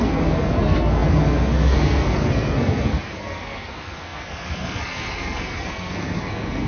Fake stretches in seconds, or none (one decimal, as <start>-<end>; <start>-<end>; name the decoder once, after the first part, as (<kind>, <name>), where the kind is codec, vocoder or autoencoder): 0.0-6.7 (codec, SNAC)